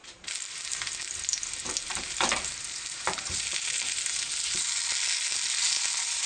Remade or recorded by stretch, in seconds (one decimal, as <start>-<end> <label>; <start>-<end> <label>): 0.0-0.8 remade; 0.8-1.9 recorded; 1.9-3.8 remade; 3.8-6.3 recorded